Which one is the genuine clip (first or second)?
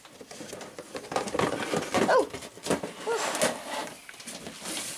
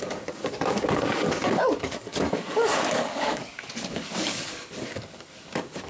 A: first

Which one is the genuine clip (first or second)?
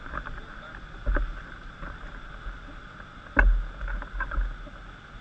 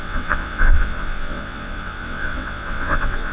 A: first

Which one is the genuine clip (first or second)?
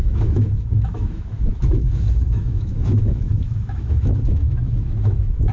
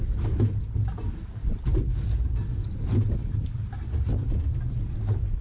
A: second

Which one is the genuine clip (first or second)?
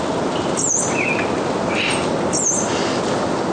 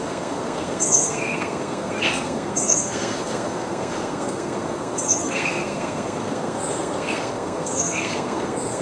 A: first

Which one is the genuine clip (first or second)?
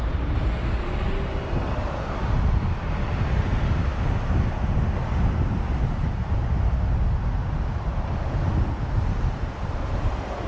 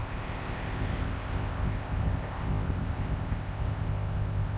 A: first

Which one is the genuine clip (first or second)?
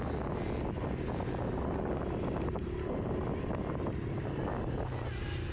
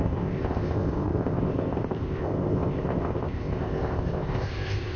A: first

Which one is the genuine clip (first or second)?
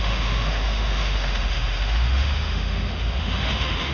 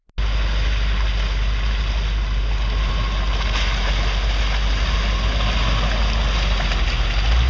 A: second